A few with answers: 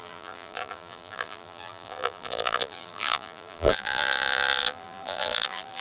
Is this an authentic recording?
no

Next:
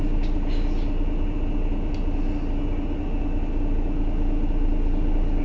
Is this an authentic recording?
yes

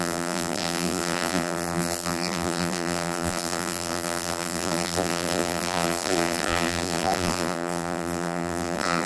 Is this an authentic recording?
no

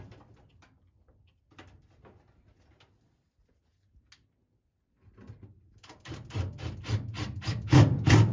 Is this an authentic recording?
yes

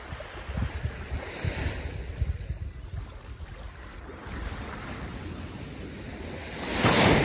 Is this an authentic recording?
yes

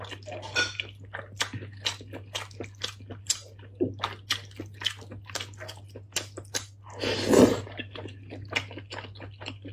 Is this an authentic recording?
yes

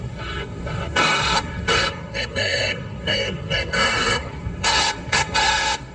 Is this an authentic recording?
no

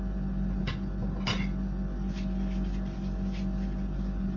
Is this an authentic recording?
yes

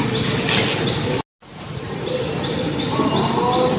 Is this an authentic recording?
yes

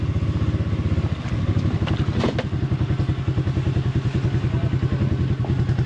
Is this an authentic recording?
yes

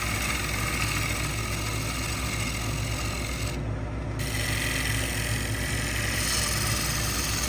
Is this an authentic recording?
yes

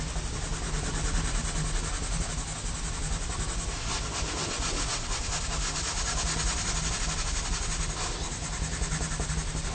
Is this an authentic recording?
yes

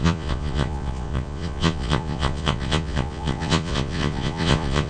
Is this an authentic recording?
no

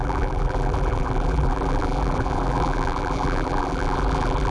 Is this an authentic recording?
no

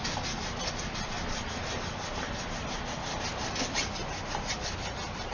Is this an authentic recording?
yes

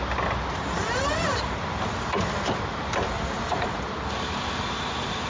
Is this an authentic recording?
yes